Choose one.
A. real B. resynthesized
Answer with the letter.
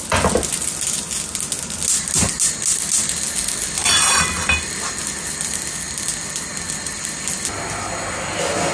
A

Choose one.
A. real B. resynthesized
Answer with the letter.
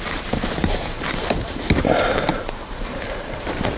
B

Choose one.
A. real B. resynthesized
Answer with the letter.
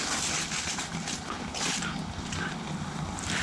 A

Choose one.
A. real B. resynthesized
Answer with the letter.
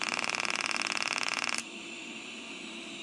B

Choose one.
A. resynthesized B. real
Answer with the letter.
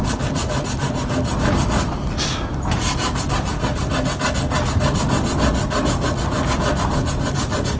B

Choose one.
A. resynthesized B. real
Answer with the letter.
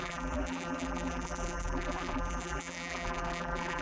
A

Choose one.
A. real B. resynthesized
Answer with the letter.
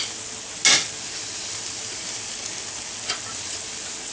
A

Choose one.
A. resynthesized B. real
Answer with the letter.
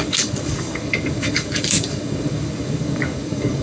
A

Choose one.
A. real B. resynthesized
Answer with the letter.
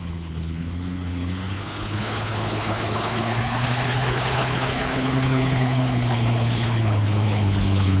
B